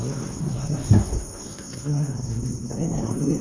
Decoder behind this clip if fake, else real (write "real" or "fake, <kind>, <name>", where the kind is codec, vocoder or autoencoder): fake, codec, SNAC